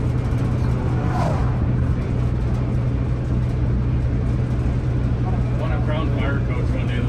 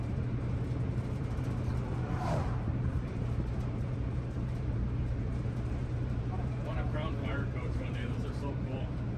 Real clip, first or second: first